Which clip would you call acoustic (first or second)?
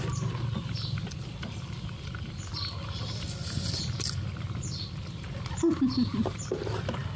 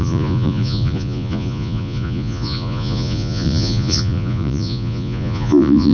first